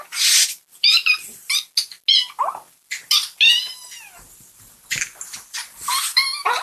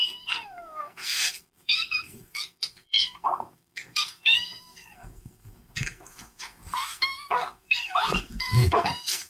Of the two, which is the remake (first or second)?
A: second